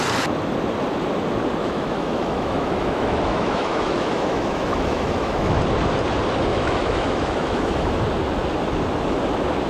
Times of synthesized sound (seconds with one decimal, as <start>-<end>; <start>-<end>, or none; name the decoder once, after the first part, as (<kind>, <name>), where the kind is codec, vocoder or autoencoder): 1.6-5.6 (autoencoder, DAC-VAE); 6.5-8.0